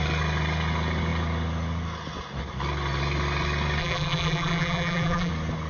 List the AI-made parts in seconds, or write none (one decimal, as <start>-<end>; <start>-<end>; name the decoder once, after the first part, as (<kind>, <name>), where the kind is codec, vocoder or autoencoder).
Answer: 3.8-5.3 (vocoder, BigVGAN v2)